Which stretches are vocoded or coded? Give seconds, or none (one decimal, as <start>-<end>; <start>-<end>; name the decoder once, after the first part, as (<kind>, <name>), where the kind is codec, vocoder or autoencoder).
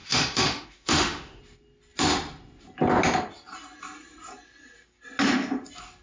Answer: 0.0-1.4 (autoencoder, DAC-VAE)